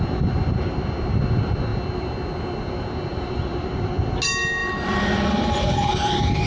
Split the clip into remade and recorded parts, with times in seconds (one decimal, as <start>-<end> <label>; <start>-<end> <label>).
0.0-3.1 recorded; 3.1-3.9 remade; 3.9-4.6 recorded; 4.6-5.9 remade; 5.9-6.5 recorded